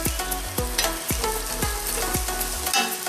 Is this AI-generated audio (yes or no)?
no